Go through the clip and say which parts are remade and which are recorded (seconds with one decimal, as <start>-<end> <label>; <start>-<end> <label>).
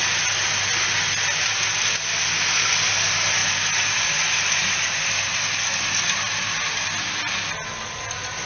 0.0-8.5 recorded